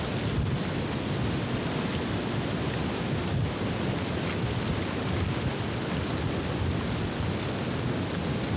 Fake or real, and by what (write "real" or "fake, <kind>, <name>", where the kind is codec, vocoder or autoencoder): real